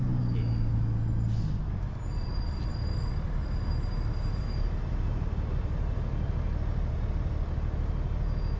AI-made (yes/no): no